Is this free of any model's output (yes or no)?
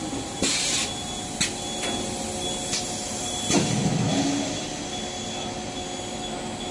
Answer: yes